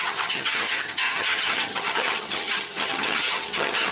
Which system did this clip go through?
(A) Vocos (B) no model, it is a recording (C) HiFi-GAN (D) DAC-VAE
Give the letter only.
C